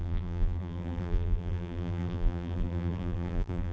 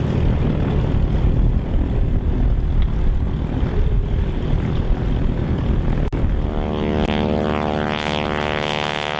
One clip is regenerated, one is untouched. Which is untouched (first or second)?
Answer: second